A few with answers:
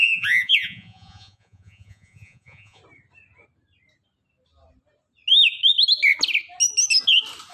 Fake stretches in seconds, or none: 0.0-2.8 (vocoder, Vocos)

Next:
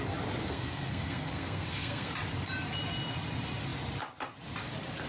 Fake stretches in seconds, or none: 0.4-2.1 (codec, SNAC)

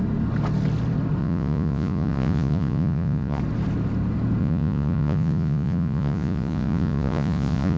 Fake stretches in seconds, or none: 1.2-3.4 (vocoder, Vocos); 4.4-7.8

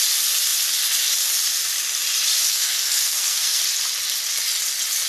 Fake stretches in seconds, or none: 2.5-3.6 (codec, SNAC)